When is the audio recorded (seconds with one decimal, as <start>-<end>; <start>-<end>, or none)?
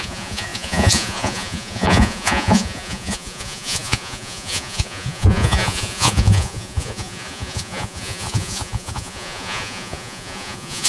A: none